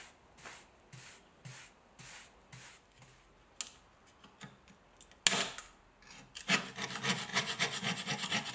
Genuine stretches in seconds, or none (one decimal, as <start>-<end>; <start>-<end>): 0.0-7.3

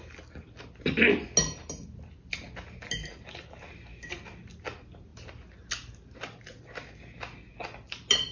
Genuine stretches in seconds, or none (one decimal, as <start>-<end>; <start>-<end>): 0.0-8.3